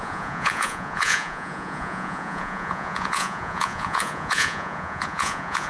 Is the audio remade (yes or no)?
yes